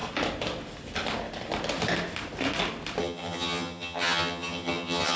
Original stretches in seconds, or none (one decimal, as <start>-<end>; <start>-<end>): 0.0-3.0